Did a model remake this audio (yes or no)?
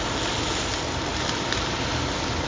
no